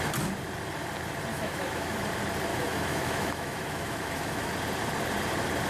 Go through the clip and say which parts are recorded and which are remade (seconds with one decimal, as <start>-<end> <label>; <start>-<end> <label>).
0.0-1.3 recorded; 1.3-2.1 remade; 2.1-2.5 recorded; 2.5-4.5 remade; 4.5-5.7 recorded